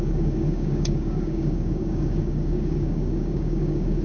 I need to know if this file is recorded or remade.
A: remade